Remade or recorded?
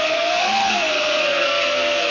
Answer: remade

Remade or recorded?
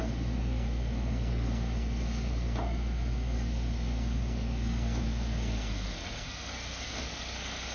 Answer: remade